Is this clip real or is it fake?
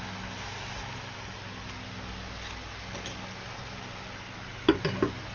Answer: real